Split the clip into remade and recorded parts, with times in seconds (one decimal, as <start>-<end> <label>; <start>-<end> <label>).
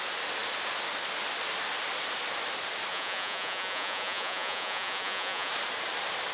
0.0-2.9 recorded; 2.9-5.5 remade; 5.5-6.3 recorded